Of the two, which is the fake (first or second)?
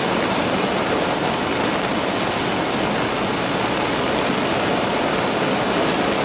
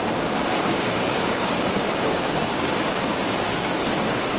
second